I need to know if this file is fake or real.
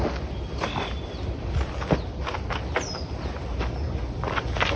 real